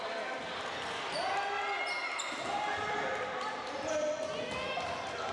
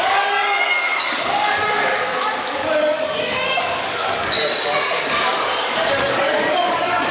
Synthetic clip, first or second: second